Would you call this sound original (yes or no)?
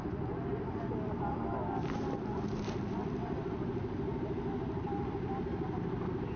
yes